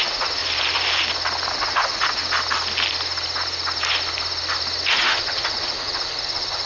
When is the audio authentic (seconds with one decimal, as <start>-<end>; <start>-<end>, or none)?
0.4-1.5; 2.2-4.9